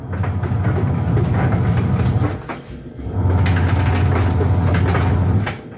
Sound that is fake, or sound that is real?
real